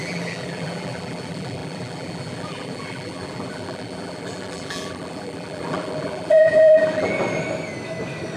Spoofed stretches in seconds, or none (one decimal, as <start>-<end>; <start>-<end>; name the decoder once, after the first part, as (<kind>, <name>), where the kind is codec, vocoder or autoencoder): 0.0-7.1 (vocoder, BigVGAN v2)